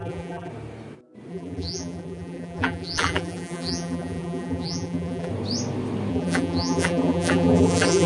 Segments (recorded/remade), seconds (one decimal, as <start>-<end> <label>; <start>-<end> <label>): 0.0-0.5 remade; 0.5-1.3 recorded; 1.3-5.3 remade; 5.3-6.1 recorded; 6.1-8.1 remade